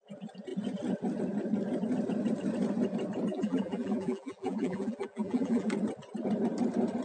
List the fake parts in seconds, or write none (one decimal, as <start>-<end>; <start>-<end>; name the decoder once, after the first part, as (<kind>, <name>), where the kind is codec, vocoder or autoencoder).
3.3-5.7 (vocoder, BigVGAN v2)